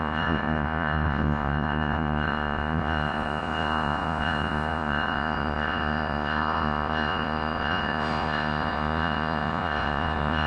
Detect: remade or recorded remade